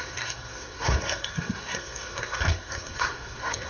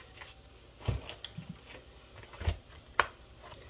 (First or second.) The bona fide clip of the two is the second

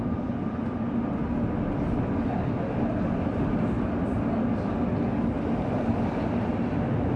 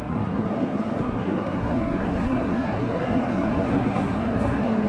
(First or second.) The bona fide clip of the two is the first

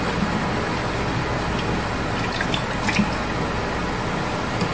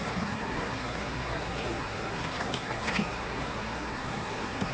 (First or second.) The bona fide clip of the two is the first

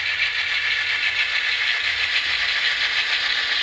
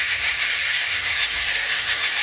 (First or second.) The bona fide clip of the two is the first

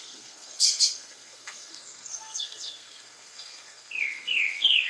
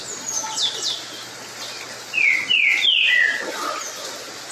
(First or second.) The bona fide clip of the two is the second